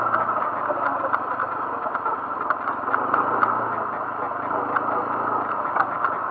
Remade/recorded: recorded